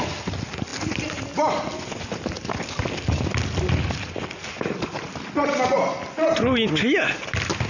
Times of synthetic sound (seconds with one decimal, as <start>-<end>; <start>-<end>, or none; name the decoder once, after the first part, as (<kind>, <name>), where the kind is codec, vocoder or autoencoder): none